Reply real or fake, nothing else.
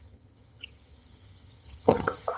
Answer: fake